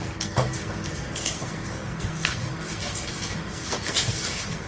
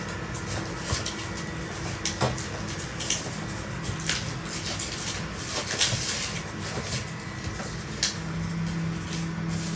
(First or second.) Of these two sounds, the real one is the second